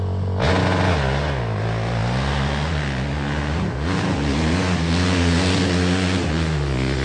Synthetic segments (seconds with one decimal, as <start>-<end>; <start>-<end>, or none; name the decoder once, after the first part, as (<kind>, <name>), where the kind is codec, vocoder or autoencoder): none